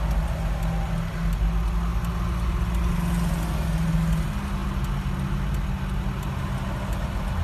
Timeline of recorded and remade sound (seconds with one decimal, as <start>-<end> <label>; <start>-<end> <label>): 0.0-7.4 recorded